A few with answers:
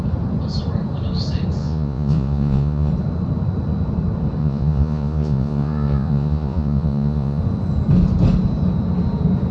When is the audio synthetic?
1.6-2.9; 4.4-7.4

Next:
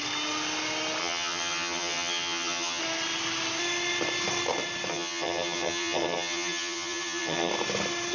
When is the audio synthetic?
1.0-2.8; 4.9-7.5

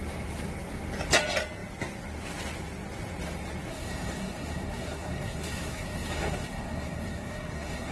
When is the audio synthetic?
3.7-7.9

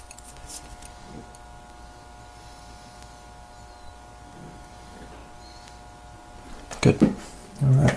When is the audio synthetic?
none

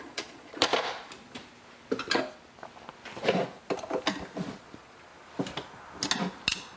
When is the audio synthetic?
0.0-0.7; 4.6-5.1

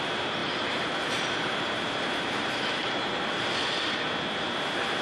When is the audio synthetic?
0.4-3.4

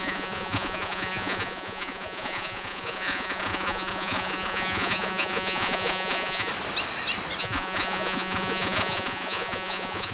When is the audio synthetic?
0.0-6.5; 7.4-10.1

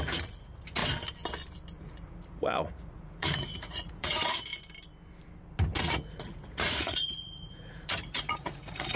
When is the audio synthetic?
0.0-0.8; 1.8-4.5; 5.8-9.0